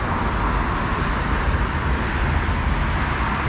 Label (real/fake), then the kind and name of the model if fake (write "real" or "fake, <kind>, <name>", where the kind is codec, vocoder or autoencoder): real